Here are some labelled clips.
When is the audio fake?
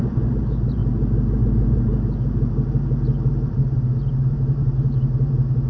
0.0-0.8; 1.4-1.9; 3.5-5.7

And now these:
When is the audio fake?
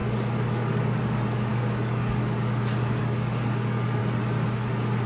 0.0-4.0